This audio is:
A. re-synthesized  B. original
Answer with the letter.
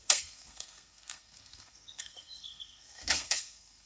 A